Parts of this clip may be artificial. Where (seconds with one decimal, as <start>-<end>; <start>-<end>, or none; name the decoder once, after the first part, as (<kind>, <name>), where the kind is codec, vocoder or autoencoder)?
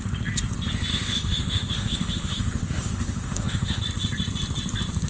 0.9-3.8 (autoencoder, DAC-VAE)